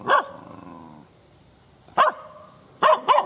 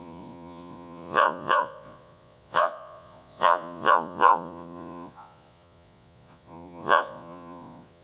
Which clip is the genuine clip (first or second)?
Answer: first